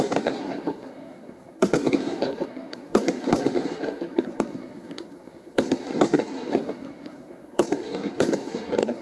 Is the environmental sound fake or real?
fake